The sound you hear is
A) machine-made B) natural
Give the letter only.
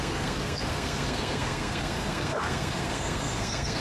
A